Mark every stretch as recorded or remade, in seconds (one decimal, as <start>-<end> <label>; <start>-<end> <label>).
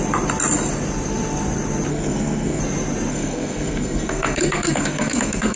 0.0-1.9 recorded; 1.9-2.6 remade; 2.6-3.1 recorded; 3.1-5.6 remade